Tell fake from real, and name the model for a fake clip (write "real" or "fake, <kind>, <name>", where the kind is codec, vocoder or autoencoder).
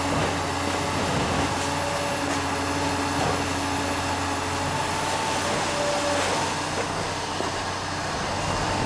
real